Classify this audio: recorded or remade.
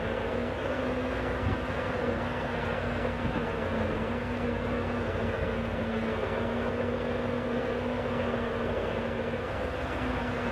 remade